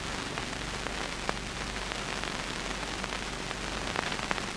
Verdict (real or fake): real